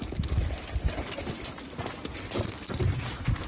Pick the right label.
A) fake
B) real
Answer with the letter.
B